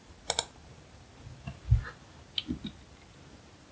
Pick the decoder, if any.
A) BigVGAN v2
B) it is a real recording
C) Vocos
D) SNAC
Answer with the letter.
B